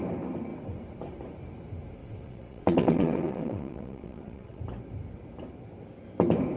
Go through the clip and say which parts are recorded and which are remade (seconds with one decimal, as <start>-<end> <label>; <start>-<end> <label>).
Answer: 0.0-2.0 recorded; 2.0-4.6 remade; 4.6-6.6 recorded